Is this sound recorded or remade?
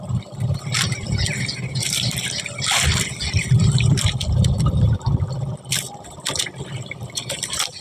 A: remade